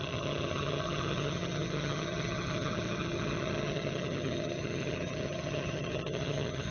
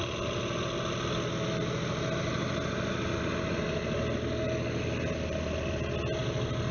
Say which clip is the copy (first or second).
first